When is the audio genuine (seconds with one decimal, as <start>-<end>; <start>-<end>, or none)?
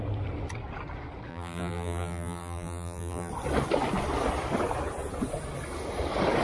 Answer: 0.0-1.3; 3.3-6.4